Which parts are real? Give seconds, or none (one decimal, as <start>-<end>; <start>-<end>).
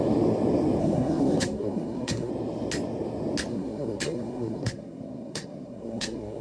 0.0-0.8; 2.3-3.5